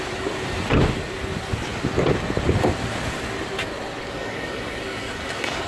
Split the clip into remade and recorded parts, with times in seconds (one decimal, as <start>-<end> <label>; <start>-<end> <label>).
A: 0.0-4.0 recorded; 4.0-5.7 remade

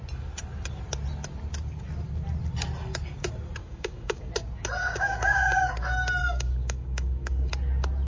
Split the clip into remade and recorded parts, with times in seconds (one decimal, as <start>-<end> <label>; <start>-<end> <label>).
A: 0.0-3.6 recorded; 3.6-4.3 remade; 4.3-4.8 recorded; 4.8-5.7 remade; 5.7-6.2 recorded; 6.2-7.5 remade; 7.5-8.1 recorded

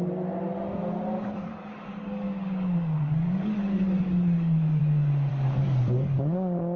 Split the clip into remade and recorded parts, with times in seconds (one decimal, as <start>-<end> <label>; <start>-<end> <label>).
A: 0.0-1.3 recorded; 1.3-4.8 remade; 4.8-5.3 recorded; 5.3-6.8 remade

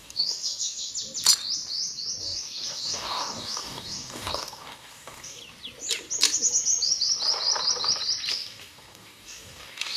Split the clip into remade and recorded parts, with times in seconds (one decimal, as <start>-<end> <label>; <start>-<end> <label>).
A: 0.0-0.9 remade; 0.9-2.2 recorded; 2.2-5.4 remade; 5.4-8.3 recorded; 8.3-10.0 remade

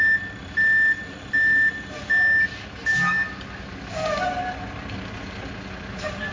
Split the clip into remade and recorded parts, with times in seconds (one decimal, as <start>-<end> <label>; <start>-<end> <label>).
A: 0.0-6.3 recorded